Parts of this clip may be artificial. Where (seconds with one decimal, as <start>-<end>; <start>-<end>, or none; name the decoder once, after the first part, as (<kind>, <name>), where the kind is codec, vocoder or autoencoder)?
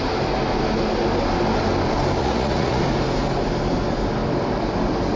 2.2-2.8 (vocoder, Vocos)